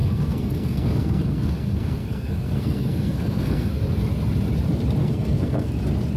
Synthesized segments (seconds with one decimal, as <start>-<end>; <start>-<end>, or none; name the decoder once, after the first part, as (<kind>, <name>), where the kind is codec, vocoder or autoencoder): 0.0-3.7 (codec, SNAC); 5.0-5.7